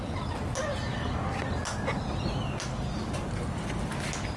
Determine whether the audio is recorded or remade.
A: recorded